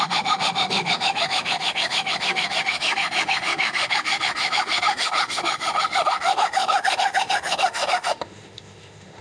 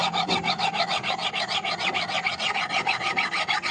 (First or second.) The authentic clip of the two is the second